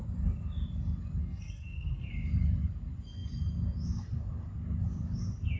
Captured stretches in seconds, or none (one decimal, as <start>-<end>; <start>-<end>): 0.0-1.2; 2.1-5.6